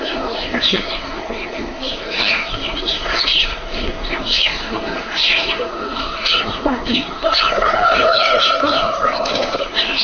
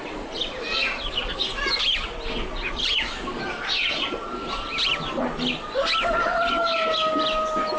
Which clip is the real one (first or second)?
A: second